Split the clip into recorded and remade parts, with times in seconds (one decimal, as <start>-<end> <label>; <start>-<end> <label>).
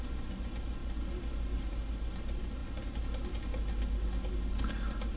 0.0-5.2 recorded